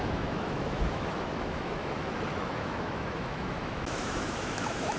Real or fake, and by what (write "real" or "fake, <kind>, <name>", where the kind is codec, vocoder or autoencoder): fake, autoencoder, DAC-VAE